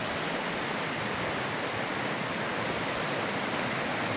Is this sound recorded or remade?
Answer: recorded